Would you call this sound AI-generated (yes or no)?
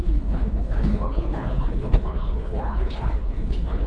yes